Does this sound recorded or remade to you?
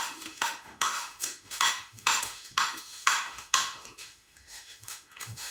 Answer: remade